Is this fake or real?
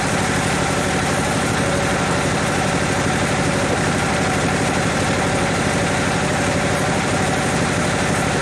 fake